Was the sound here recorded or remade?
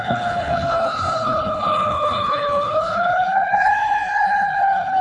remade